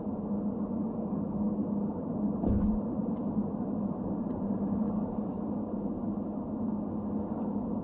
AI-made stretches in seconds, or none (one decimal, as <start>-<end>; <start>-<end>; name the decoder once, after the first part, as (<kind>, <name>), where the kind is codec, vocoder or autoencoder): 1.6-5.4 (vocoder, BigVGAN v2)